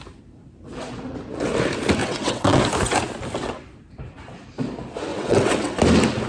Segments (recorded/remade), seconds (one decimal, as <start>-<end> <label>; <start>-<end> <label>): 0.0-2.0 recorded; 2.0-2.6 remade; 2.6-5.1 recorded; 5.1-5.8 remade; 5.8-6.3 recorded